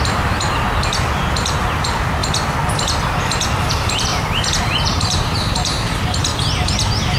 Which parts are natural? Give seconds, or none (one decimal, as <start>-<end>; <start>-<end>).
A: 2.2-3.6; 4.1-4.6; 6.3-7.2